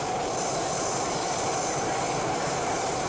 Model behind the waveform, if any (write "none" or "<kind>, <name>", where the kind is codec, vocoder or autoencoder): none